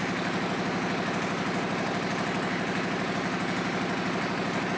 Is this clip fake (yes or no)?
no